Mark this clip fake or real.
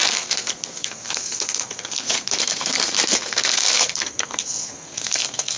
fake